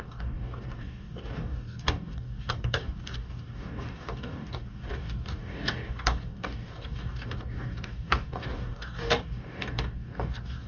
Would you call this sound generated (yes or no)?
yes